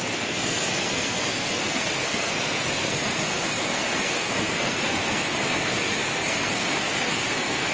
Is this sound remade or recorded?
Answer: remade